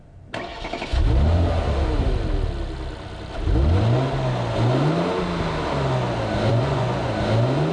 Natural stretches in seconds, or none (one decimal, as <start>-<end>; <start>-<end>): 0.0-6.5; 7.1-7.7